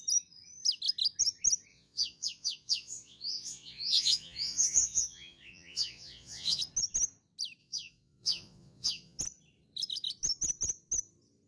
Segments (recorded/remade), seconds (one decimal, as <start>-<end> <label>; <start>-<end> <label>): 0.0-1.7 recorded; 1.7-6.6 remade; 6.6-7.6 recorded; 7.6-9.2 remade; 9.2-11.5 recorded